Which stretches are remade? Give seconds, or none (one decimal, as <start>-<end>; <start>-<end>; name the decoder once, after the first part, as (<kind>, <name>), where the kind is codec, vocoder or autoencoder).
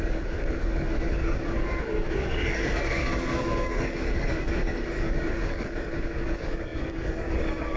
0.0-7.8 (codec, DAC)